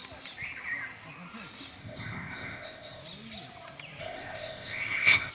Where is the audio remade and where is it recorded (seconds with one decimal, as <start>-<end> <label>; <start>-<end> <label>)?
0.0-1.8 recorded; 1.8-3.0 remade; 3.0-4.0 recorded; 4.0-5.3 remade